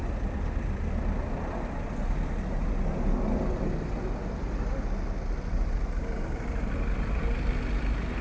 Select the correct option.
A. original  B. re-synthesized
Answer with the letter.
A